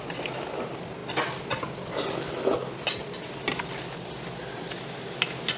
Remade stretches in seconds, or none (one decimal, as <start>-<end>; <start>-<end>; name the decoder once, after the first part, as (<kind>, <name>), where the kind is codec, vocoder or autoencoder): none